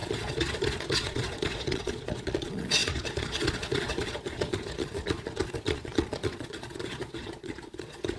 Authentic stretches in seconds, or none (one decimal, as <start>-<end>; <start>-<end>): none